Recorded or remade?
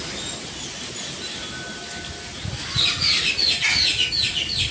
recorded